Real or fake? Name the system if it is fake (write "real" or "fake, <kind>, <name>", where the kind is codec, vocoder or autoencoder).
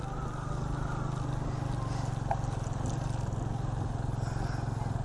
real